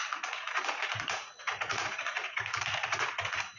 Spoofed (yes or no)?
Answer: yes